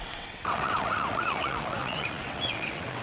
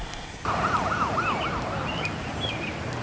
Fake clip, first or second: first